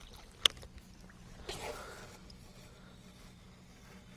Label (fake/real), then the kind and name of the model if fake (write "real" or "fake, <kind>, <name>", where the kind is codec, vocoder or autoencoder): real